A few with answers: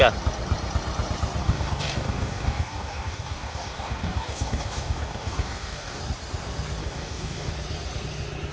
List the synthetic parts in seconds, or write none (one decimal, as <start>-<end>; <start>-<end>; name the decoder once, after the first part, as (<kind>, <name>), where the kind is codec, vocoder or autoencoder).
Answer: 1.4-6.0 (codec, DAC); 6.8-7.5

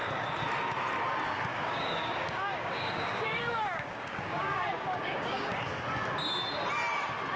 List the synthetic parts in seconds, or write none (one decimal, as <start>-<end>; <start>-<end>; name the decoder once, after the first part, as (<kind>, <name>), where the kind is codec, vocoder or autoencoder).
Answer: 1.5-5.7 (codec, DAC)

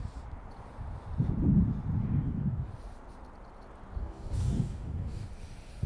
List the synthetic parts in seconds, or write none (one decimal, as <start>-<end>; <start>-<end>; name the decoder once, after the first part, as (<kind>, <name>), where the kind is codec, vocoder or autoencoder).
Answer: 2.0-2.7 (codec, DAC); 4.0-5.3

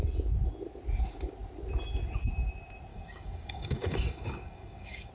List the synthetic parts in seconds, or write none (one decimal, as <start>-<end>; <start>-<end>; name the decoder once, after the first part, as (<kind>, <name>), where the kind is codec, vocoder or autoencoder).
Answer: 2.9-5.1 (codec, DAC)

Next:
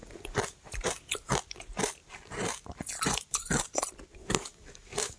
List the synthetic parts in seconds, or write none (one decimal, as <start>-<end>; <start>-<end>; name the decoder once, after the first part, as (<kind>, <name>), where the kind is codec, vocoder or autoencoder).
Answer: 4.2-5.2 (codec, DAC)

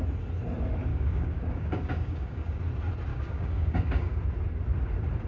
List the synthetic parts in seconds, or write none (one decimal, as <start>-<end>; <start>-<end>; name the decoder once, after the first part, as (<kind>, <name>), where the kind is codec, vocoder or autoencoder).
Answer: 0.9-2.6 (codec, DAC); 3.1-4.2